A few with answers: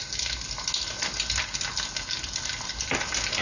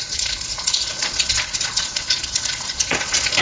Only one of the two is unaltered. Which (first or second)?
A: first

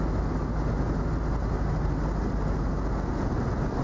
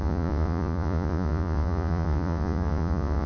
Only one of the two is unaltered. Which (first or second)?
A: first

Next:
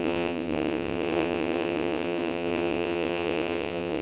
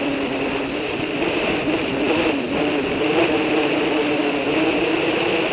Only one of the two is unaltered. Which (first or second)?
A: second